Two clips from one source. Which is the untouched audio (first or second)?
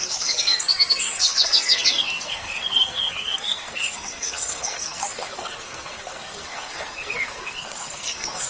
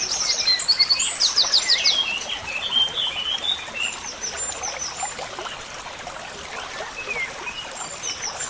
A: second